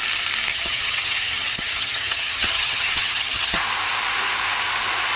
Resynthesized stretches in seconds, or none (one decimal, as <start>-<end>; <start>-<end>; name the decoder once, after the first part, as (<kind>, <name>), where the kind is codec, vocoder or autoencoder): 0.5-3.6 (vocoder, HiFi-GAN)